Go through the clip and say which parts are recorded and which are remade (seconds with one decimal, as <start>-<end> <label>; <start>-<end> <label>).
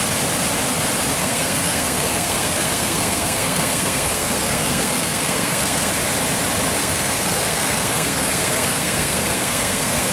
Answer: 0.0-1.2 recorded; 1.2-5.9 remade; 5.9-6.8 recorded; 6.8-10.1 remade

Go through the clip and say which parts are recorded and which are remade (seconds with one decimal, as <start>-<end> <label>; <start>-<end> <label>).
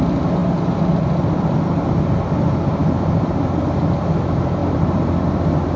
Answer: 0.0-2.8 recorded; 2.8-3.6 remade; 3.6-4.6 recorded; 4.6-5.2 remade; 5.2-5.8 recorded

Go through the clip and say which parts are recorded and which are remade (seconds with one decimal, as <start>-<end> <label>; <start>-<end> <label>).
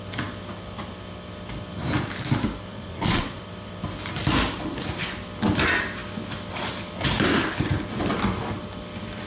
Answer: 0.0-2.7 recorded; 2.7-3.4 remade; 3.4-9.3 recorded